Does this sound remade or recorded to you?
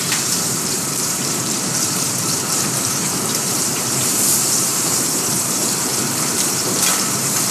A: remade